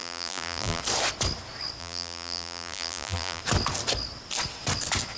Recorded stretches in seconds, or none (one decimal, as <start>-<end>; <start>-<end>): 0.8-1.8; 3.4-5.2